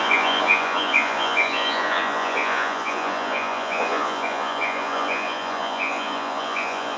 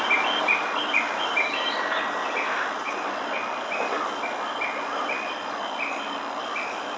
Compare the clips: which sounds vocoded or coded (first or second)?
first